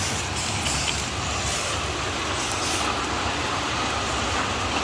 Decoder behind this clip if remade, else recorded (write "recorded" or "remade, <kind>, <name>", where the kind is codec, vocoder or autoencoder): recorded